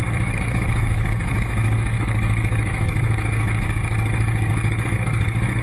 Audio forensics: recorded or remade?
remade